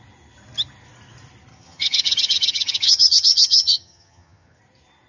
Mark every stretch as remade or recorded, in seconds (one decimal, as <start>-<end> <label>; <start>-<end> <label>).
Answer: 0.0-1.5 recorded; 1.5-4.6 remade; 4.6-5.1 recorded